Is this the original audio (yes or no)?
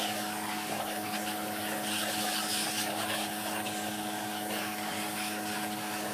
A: no